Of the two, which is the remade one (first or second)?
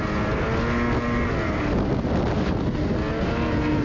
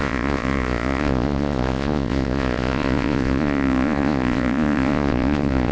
second